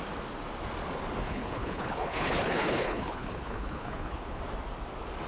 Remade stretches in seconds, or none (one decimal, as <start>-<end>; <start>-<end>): 1.2-4.4